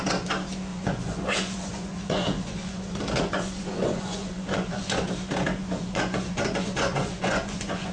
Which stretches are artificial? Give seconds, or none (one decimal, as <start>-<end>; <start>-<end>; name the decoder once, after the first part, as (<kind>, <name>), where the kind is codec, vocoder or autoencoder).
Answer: 0.7-5.1 (vocoder, Vocos); 5.6-7.9